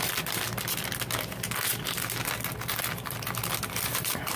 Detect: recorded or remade recorded